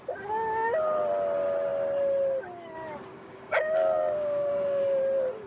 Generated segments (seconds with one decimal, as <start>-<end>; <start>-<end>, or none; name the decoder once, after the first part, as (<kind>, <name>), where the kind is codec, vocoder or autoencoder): 3.1-4.8 (codec, DAC)